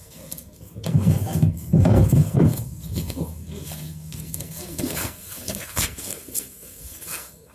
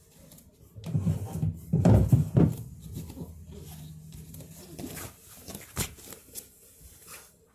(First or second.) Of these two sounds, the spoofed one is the first